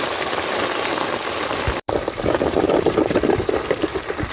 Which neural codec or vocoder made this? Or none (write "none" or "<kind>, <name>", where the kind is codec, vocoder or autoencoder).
vocoder, BigVGAN v2